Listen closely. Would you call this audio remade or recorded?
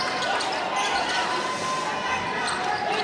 recorded